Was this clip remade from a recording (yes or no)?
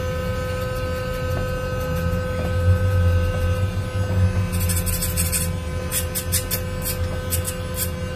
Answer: no